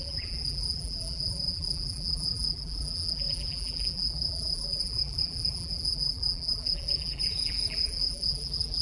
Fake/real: fake